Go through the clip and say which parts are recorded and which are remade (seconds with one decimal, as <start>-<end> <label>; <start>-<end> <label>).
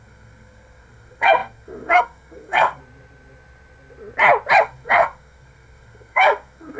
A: 0.0-2.8 remade; 2.8-4.6 recorded; 4.6-6.8 remade